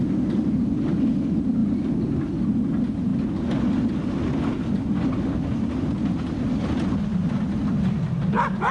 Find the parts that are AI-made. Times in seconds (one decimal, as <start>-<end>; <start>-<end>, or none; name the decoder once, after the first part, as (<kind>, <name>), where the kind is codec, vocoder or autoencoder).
none